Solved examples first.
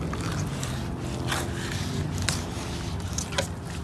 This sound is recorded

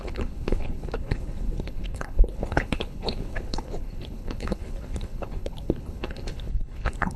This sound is remade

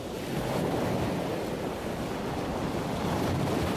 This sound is recorded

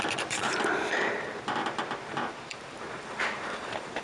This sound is remade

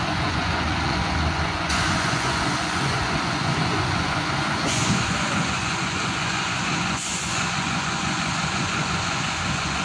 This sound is remade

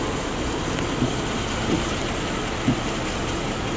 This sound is recorded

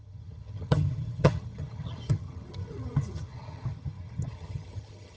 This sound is remade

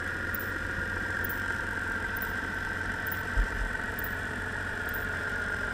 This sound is remade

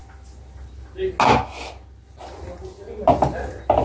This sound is recorded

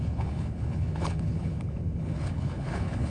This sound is remade